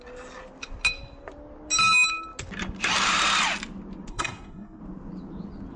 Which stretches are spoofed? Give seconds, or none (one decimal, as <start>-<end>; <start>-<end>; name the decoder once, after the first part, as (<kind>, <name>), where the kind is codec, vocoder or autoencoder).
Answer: 4.1-4.8 (codec, SNAC)